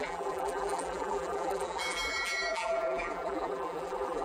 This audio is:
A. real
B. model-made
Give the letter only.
B